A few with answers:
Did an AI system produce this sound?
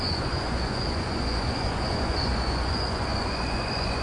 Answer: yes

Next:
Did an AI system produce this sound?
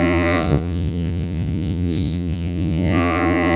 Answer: yes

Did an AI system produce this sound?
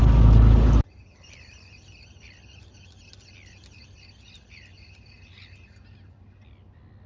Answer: no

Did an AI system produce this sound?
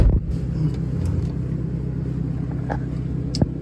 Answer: no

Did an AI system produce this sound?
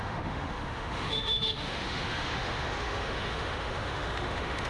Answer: yes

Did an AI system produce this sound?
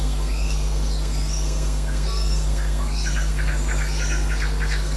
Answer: yes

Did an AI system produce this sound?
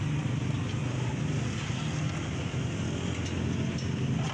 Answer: no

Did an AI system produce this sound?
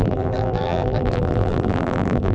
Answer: yes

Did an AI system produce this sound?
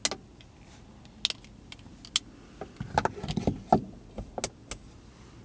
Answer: no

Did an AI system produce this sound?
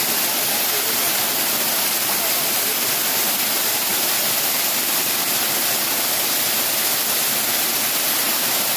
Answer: no